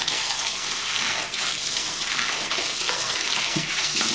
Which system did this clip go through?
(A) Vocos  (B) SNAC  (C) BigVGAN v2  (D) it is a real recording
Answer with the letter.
B